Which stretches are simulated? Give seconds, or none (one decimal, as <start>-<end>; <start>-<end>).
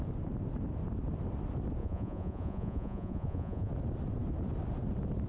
1.8-3.7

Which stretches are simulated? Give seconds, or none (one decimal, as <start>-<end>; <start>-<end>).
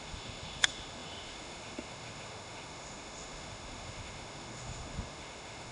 0.0-5.7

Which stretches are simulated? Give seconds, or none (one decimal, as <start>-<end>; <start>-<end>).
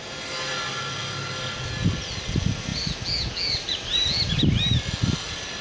none